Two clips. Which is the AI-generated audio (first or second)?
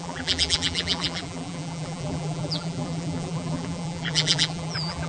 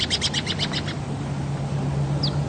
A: first